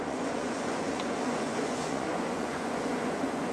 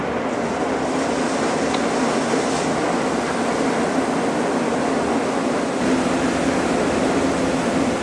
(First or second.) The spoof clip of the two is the first